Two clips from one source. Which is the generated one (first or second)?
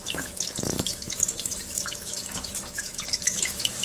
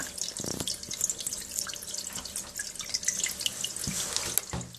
first